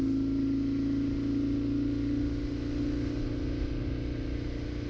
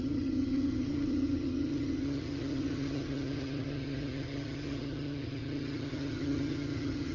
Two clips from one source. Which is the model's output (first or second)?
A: second